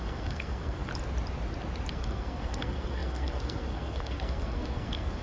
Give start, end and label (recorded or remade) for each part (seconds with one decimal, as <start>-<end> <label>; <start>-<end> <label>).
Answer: 0.0-0.9 remade; 0.9-1.9 recorded; 1.9-5.2 remade